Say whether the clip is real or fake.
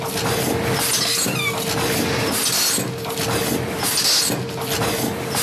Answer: real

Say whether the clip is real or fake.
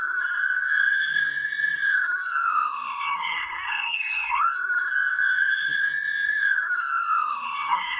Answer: fake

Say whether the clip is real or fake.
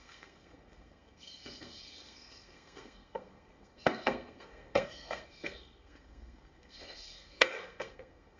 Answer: fake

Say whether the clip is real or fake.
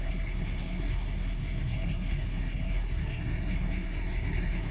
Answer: fake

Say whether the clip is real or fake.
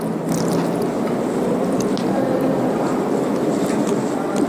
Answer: real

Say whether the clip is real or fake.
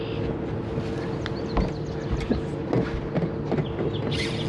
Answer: real